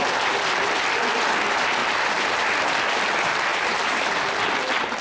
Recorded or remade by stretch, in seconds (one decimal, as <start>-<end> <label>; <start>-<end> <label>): 0.0-1.8 recorded; 1.8-2.4 remade; 2.4-3.5 recorded; 3.5-4.3 remade; 4.3-5.0 recorded